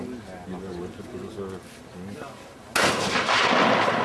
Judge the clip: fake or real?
real